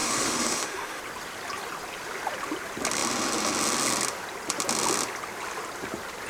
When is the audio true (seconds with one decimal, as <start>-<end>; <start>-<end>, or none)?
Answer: 1.0-6.3